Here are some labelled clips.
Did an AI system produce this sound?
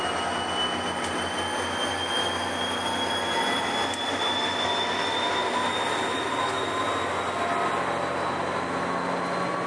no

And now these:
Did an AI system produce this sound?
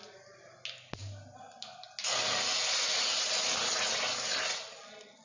no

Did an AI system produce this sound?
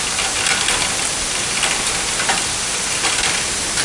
no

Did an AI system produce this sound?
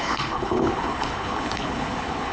yes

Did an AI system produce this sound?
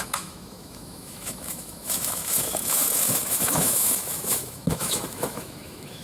yes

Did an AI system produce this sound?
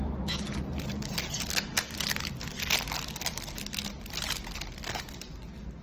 no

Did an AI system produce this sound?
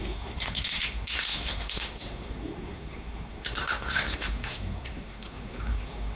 yes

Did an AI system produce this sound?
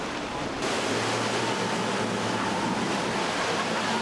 no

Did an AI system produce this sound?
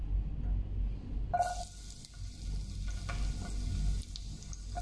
no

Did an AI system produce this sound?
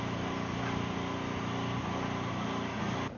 no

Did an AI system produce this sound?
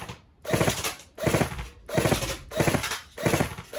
no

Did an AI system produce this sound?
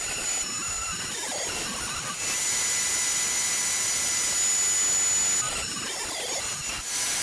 no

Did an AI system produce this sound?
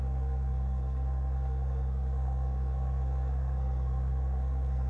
yes